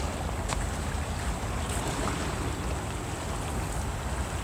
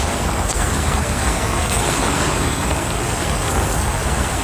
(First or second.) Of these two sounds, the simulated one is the second